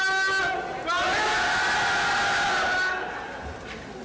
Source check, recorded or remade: recorded